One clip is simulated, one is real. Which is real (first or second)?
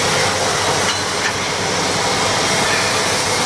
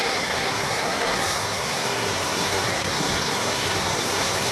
first